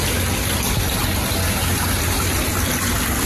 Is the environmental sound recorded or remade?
recorded